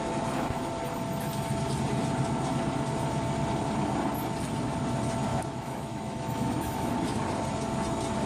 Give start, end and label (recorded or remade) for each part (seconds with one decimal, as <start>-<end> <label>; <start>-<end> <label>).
0.0-5.3 recorded; 5.3-6.9 remade; 6.9-8.3 recorded